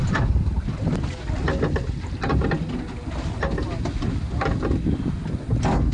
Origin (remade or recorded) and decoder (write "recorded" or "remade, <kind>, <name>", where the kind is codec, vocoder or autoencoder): recorded